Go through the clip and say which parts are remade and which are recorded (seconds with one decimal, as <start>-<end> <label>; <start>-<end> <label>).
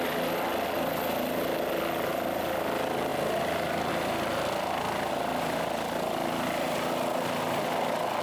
0.0-8.2 recorded